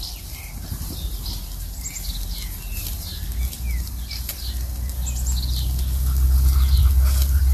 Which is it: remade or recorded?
recorded